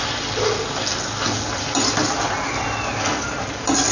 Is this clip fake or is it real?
real